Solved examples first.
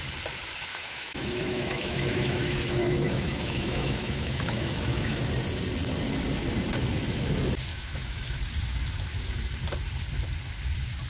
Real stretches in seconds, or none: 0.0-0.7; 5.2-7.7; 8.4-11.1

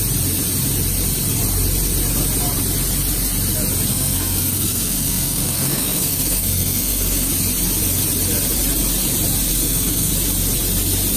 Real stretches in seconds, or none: 0.0-3.9; 7.3-9.5; 10.1-11.2

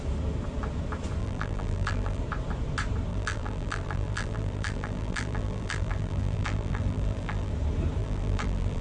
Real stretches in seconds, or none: 0.0-1.2; 2.2-3.1; 7.5-8.0

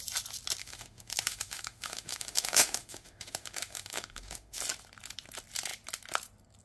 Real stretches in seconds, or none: 0.0-0.6; 4.6-6.6

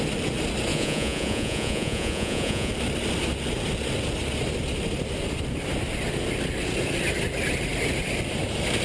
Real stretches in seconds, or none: 0.0-0.7; 2.7-8.8